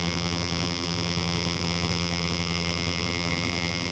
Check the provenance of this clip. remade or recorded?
remade